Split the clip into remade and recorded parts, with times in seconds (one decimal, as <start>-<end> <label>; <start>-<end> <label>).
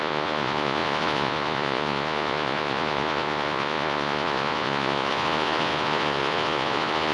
0.0-7.1 remade